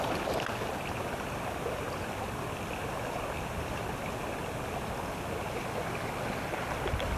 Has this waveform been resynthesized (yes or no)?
no